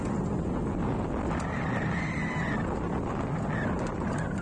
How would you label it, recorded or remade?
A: recorded